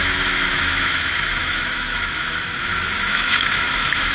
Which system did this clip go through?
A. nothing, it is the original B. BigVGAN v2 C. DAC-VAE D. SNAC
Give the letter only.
C